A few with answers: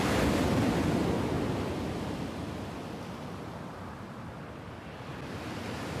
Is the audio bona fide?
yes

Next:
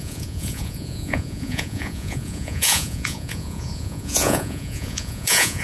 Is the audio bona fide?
no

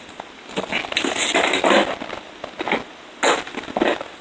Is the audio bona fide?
yes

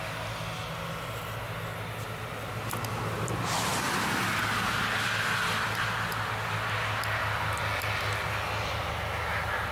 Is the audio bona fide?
yes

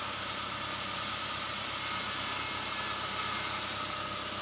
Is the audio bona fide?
yes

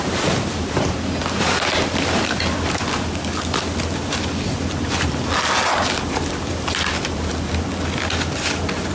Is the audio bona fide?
yes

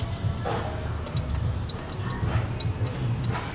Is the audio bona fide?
yes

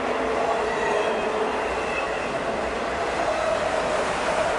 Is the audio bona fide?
yes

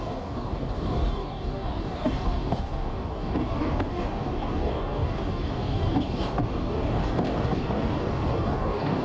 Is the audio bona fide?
no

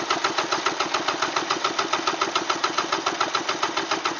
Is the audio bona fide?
yes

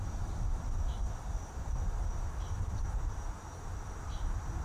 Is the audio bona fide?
no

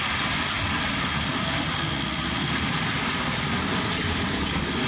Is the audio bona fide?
yes